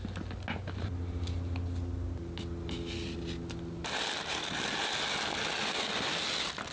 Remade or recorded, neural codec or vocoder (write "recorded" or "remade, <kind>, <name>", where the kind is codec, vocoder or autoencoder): recorded